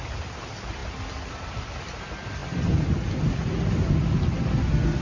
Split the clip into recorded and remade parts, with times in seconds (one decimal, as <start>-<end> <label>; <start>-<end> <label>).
0.0-5.0 recorded